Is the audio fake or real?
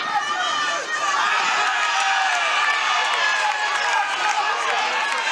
real